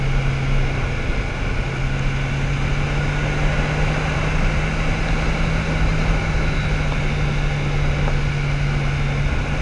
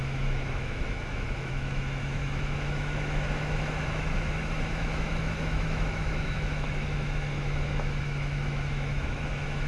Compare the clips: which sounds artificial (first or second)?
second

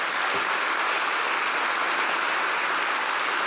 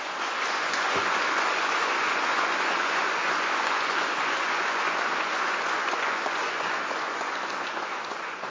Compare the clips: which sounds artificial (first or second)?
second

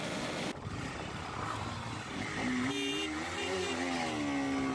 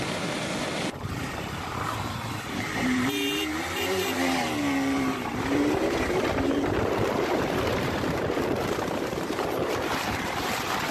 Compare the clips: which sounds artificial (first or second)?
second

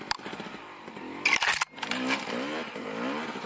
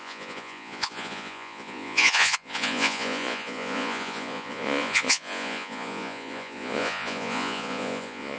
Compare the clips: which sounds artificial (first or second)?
second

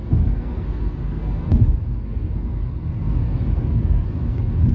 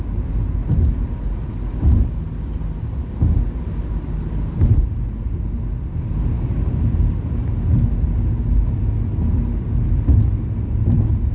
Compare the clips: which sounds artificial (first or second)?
first